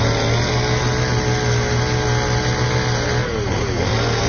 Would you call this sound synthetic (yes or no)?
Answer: no